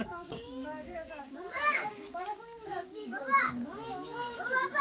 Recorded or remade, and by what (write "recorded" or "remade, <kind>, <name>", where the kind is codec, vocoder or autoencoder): remade, codec, DAC